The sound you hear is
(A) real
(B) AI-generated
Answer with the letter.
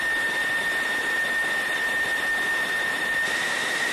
A